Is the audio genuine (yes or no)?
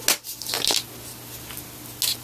yes